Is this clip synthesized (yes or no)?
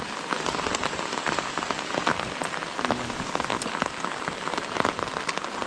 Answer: no